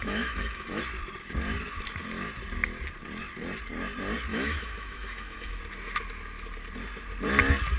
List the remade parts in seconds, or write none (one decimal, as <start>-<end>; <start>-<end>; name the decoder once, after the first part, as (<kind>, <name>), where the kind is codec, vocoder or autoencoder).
0.0-0.8 (autoencoder, DAC-VAE); 4.3-5.6